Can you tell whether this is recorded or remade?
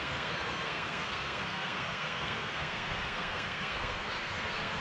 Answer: remade